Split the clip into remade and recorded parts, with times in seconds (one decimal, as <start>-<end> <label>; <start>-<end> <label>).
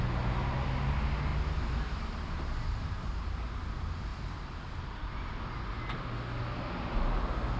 0.0-7.6 recorded